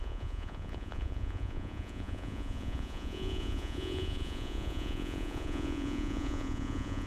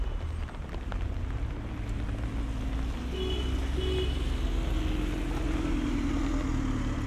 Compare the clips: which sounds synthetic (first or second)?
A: first